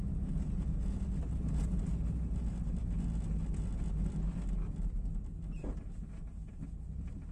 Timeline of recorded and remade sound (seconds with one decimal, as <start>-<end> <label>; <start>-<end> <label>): 0.0-7.3 recorded